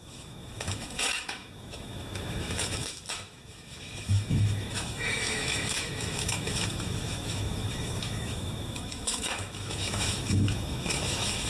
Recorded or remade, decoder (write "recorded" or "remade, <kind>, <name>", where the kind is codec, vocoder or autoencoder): remade, autoencoder, DAC-VAE